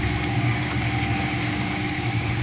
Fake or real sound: fake